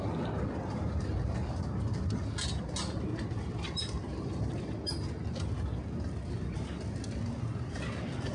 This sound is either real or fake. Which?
real